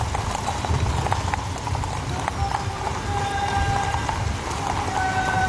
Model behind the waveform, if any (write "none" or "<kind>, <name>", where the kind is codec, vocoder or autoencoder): none